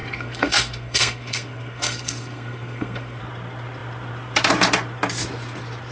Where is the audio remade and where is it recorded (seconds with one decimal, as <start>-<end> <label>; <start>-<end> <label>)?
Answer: 0.0-3.2 remade; 3.2-5.9 recorded